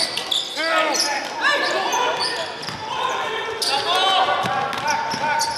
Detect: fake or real real